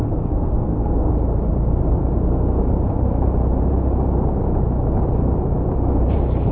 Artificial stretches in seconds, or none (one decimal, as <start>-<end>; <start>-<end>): 0.0-1.1; 2.1-2.6

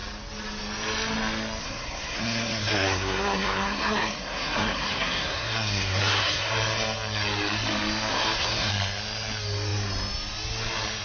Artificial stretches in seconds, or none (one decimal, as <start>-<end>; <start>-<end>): 1.6-6.5; 8.1-8.7

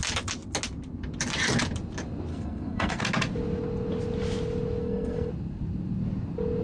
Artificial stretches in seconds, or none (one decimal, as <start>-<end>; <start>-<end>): 2.3-3.0; 4.8-5.3